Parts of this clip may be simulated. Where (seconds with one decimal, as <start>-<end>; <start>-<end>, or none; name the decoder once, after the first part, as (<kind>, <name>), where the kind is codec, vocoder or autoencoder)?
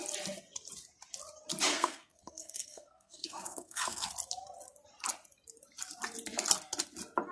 1.7-4.1 (codec, SNAC)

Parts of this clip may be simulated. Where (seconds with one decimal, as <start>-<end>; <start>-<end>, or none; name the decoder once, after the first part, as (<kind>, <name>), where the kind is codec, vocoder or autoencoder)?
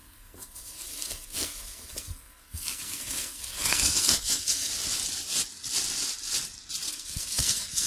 0.0-4.7 (codec, SNAC); 6.9-7.9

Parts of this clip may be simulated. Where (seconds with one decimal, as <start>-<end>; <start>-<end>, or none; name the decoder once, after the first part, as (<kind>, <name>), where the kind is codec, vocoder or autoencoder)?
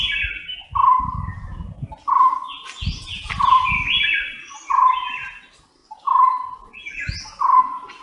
none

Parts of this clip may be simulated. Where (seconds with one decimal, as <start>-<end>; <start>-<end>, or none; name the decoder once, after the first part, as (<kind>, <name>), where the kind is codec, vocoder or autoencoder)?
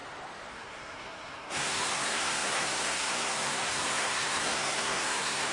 0.5-5.5 (codec, SNAC)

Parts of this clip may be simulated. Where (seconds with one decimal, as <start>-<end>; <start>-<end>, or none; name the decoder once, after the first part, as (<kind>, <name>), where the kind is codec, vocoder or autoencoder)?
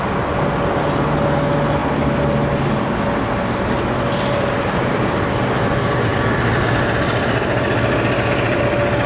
none